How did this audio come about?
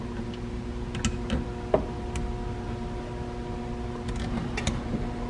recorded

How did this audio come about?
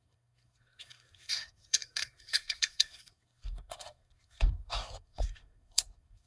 remade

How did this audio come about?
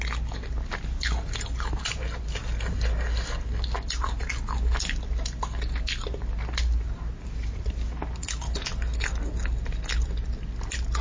recorded